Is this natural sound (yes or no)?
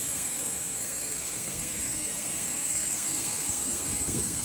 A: no